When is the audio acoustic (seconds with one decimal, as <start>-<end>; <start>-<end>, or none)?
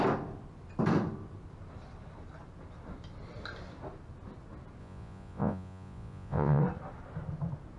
0.0-4.8; 6.6-7.8